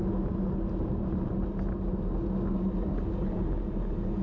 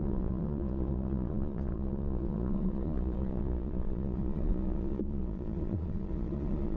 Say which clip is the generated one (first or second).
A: second